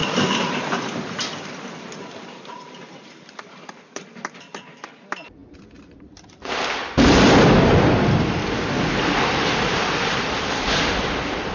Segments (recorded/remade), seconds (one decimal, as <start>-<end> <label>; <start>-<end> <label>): 0.0-2.6 recorded; 2.6-11.5 remade